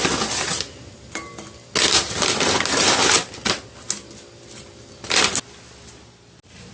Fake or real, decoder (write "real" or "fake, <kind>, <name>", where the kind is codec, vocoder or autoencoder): real